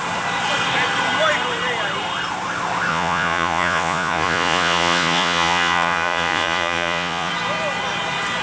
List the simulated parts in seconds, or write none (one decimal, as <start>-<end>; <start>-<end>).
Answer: 2.9-7.3